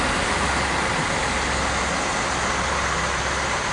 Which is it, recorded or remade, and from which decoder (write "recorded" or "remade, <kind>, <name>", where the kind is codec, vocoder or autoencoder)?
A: recorded